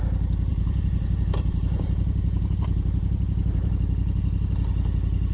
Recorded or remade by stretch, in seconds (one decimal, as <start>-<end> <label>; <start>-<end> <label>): 0.0-0.5 recorded; 0.5-3.7 remade; 3.7-5.3 recorded